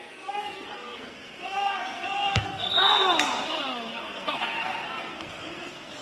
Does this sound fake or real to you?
fake